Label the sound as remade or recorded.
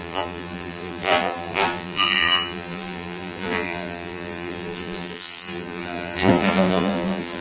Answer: remade